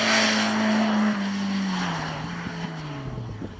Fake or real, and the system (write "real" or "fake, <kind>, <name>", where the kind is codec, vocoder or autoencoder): real